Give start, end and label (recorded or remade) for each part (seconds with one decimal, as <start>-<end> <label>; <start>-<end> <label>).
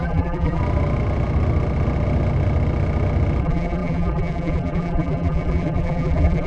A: 0.0-0.6 remade; 0.6-3.4 recorded; 3.4-6.5 remade